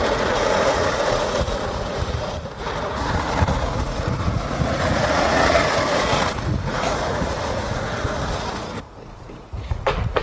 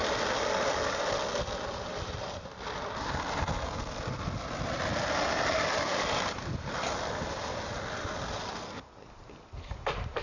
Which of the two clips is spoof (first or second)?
first